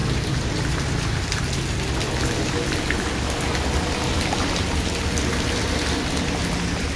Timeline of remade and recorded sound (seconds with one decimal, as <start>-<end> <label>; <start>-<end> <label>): 0.0-0.7 remade; 0.7-7.0 recorded